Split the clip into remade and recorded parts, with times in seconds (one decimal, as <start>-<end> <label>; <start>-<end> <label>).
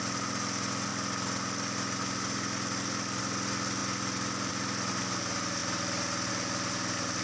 0.0-7.2 recorded